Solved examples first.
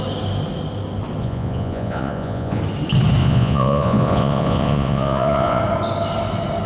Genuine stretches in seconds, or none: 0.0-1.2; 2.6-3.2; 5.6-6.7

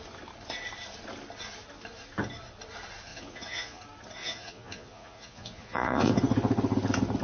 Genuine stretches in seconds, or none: 0.0-3.1; 3.8-4.2; 6.1-7.2

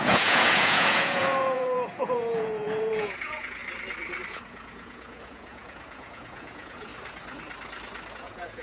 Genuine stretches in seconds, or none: 3.6-4.3; 6.9-8.1

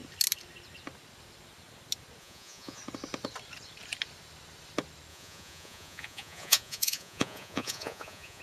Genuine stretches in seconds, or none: 0.0-2.2; 2.8-5.1

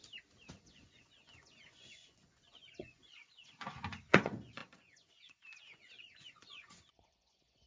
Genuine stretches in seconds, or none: 0.0-0.6